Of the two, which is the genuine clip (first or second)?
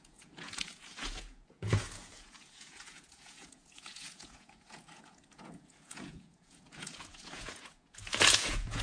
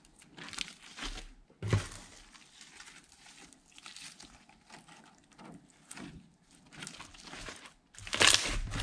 second